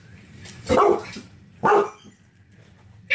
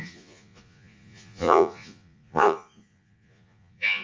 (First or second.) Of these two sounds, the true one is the first